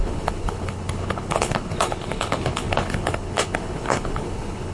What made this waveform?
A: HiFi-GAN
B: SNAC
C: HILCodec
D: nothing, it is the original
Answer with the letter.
C